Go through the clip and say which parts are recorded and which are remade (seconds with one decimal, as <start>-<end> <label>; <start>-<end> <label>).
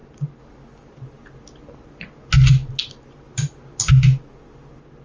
0.0-5.0 recorded